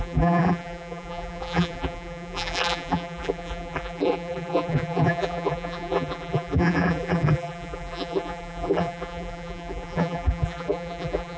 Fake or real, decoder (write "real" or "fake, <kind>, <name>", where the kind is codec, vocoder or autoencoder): fake, vocoder, BigVGAN v2